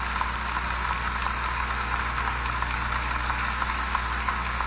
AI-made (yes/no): no